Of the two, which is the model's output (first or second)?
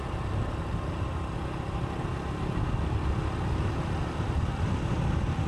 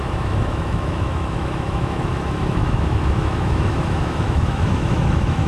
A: second